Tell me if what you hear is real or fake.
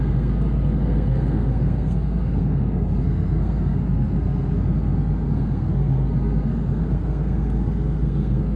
fake